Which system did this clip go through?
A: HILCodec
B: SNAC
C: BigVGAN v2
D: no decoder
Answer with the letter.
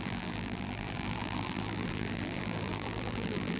C